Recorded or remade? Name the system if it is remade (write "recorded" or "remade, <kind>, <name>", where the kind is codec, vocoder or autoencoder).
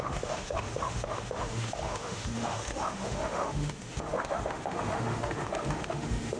remade, autoencoder, DAC-VAE